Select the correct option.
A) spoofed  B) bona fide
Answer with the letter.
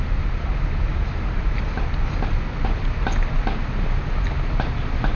B